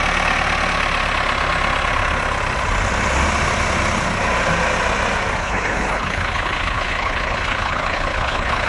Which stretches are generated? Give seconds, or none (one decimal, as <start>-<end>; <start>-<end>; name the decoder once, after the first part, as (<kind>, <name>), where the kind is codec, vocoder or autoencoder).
5.4-8.7 (codec, HILCodec)